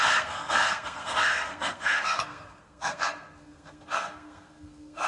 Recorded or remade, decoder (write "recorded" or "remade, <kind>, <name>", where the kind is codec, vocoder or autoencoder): remade, codec, SNAC